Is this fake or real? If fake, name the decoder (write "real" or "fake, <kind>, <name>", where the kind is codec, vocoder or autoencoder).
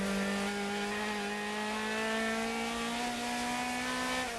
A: real